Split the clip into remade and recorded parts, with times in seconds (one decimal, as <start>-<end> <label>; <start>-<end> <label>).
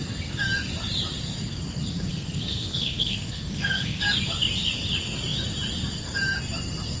0.0-2.1 recorded; 2.1-4.0 remade; 4.0-7.0 recorded